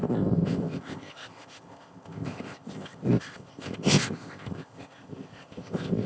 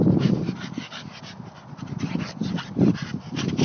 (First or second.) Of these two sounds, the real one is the second